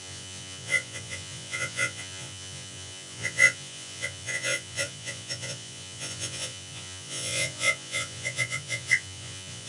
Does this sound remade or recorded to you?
remade